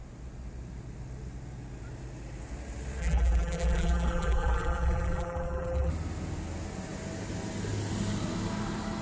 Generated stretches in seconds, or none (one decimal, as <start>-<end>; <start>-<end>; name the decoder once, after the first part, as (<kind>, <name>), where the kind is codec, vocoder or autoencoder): 3.0-5.9 (vocoder, BigVGAN v2)